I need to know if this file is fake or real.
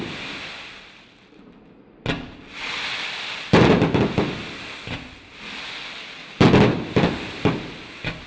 real